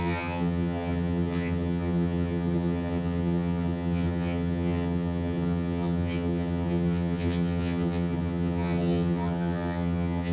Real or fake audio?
fake